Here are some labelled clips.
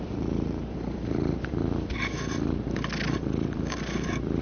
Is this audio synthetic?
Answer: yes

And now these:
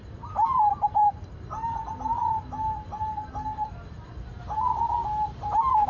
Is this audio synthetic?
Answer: yes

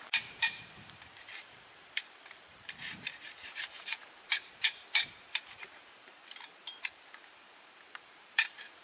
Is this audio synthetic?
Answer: yes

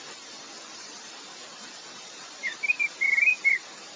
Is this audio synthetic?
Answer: no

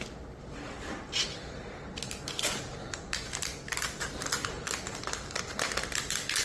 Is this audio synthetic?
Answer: yes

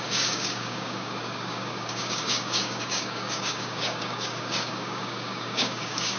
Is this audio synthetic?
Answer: yes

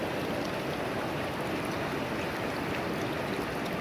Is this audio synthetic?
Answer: no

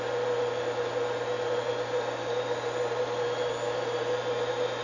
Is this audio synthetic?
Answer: no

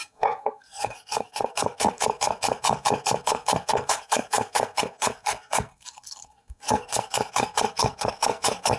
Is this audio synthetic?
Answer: yes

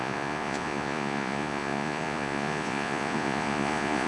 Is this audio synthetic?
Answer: yes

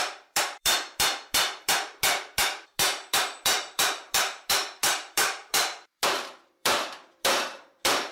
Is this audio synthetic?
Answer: yes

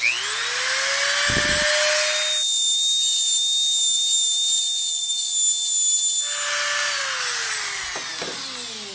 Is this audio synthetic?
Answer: no